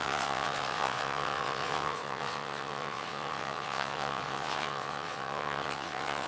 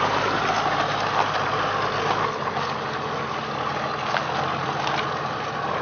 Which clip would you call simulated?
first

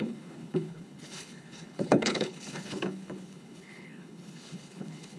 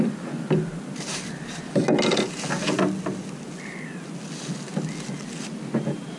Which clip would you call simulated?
first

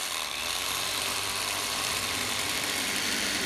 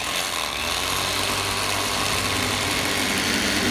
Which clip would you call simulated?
first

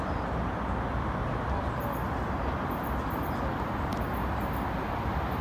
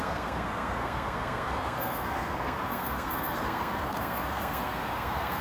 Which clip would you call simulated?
second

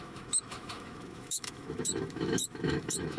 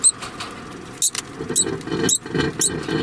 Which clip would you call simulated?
first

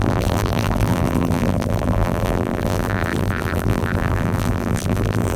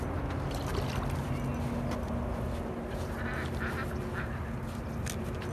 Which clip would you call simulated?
first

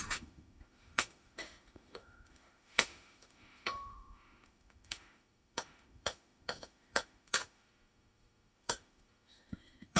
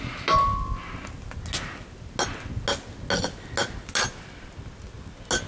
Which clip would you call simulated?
first